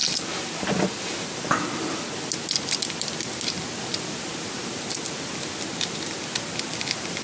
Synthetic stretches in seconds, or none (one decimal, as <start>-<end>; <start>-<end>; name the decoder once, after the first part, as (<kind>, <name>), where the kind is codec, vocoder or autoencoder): none